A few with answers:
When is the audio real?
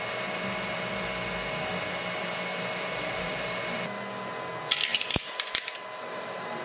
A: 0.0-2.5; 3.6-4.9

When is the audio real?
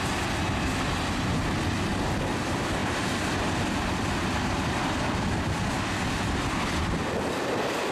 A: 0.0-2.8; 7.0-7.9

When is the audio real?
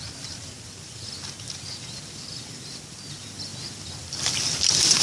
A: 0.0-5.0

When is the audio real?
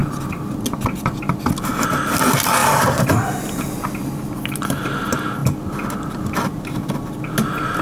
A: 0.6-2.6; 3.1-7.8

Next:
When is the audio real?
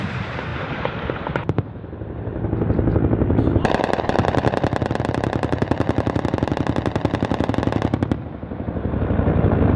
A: 0.0-9.8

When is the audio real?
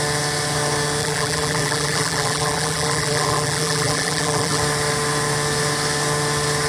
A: 0.0-1.0; 4.6-6.7